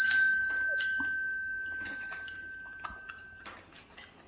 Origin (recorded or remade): recorded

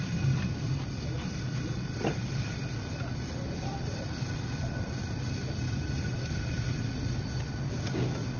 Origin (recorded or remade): recorded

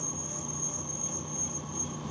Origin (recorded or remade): recorded